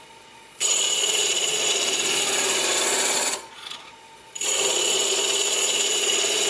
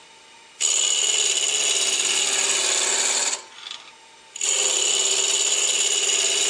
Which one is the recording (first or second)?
second